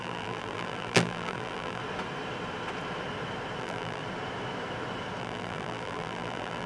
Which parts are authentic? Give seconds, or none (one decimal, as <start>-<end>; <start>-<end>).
1.8-3.6; 4.0-5.2